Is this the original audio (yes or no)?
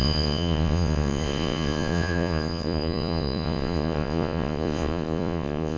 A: no